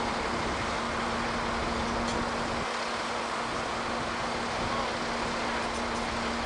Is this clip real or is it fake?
real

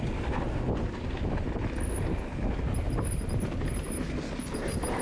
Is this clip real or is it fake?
real